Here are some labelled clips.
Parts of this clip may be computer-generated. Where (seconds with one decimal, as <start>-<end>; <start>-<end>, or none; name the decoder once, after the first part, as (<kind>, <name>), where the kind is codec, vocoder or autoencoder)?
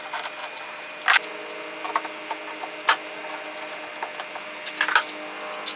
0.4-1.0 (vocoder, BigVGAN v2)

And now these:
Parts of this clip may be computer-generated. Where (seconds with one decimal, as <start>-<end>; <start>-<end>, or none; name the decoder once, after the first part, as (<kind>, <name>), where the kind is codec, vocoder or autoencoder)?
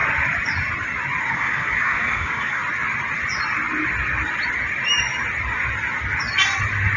1.3-2.6 (codec, DAC)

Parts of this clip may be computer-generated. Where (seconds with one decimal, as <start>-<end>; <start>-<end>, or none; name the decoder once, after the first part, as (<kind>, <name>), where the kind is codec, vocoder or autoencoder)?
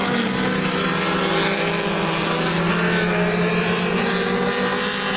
none